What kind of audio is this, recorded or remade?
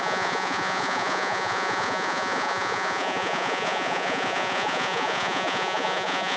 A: remade